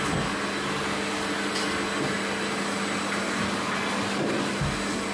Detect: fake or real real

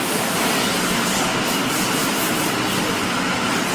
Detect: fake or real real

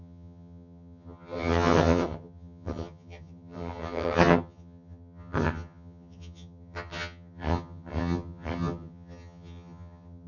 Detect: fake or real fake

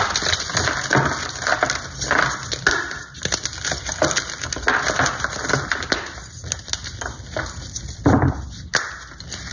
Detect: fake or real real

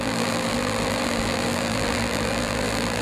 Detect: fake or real fake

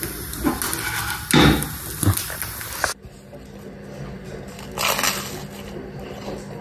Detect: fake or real real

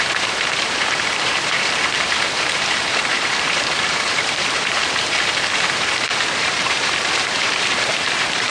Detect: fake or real fake